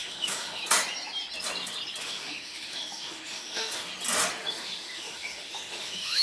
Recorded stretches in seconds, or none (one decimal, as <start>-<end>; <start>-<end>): 0.6-2.0; 3.9-4.5

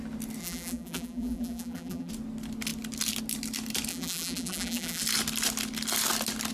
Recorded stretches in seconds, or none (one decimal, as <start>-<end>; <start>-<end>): 0.0-0.4; 2.1-3.9; 5.0-6.5